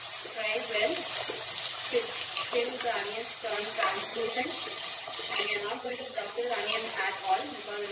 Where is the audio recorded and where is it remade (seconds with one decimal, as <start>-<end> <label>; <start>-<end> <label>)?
0.0-4.1 recorded; 4.1-6.3 remade; 6.3-7.9 recorded